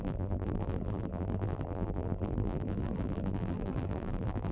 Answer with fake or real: fake